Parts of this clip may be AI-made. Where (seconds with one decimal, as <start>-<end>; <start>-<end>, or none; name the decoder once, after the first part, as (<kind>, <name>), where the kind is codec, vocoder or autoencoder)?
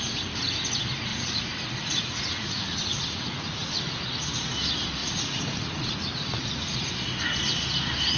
1.1-3.7 (vocoder, Vocos); 5.0-6.9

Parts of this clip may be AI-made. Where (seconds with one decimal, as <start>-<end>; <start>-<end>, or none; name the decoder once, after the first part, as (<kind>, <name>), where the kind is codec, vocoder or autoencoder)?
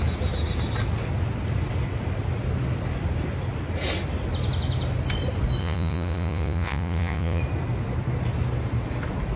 5.6-7.4 (vocoder, Vocos)